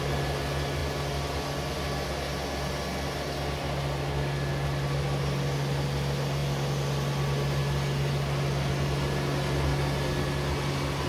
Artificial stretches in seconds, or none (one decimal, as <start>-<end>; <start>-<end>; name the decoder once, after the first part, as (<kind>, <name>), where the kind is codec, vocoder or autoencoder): none